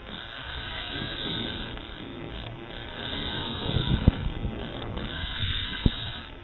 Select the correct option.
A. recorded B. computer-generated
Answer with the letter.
B